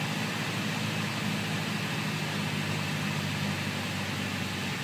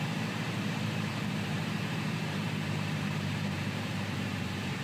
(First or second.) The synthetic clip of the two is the second